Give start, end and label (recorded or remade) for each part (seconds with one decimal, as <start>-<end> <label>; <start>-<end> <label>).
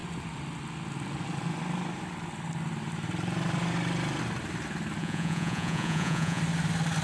0.0-5.0 recorded; 5.0-6.4 remade; 6.4-7.0 recorded